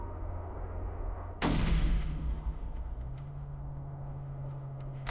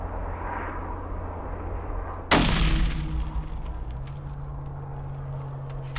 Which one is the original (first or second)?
second